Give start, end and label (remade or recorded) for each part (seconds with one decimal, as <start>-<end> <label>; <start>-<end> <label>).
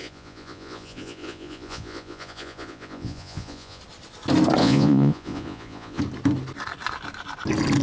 0.0-3.8 remade; 3.8-4.6 recorded; 4.6-6.0 remade; 6.0-7.8 recorded